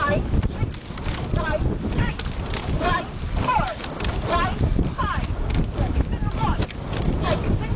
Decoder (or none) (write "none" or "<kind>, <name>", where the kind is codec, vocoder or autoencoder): none